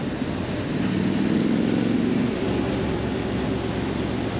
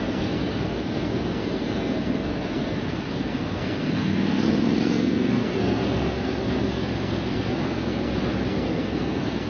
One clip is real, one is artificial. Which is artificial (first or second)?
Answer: second